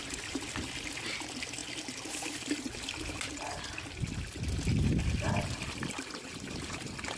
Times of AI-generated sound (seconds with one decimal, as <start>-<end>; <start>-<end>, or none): none